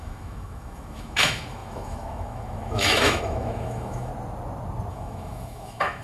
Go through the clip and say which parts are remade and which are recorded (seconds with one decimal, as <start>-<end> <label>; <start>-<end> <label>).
0.0-4.1 remade; 4.1-4.9 recorded; 4.9-6.0 remade